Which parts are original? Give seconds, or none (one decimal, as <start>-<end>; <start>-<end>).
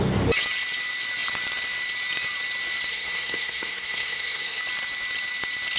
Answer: 0.0-2.9; 4.6-5.8